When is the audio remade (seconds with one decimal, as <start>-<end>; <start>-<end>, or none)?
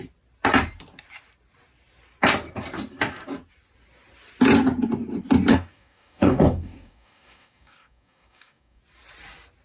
5.5-8.8